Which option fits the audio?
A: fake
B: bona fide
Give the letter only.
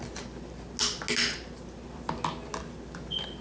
B